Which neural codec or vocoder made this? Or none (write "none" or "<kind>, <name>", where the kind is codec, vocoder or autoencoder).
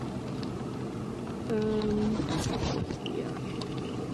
none